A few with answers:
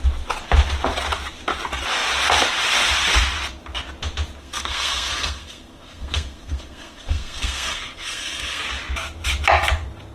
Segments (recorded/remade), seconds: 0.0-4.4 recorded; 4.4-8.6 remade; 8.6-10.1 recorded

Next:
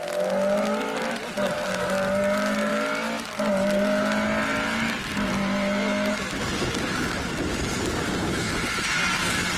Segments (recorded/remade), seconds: 0.0-9.6 recorded

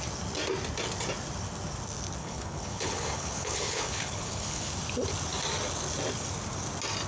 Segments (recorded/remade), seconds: 0.0-2.2 recorded; 2.2-4.7 remade; 4.7-7.1 recorded

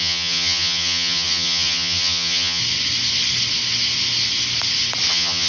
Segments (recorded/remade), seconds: 0.0-2.6 remade; 2.6-5.1 recorded; 5.1-5.5 remade

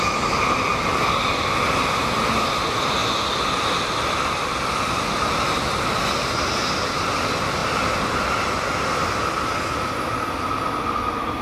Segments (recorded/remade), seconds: 0.0-11.4 recorded

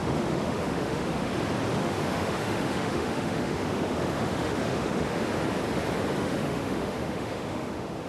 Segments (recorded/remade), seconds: 0.0-1.3 remade; 1.3-1.8 recorded; 1.8-5.2 remade; 5.2-6.2 recorded; 6.2-8.1 remade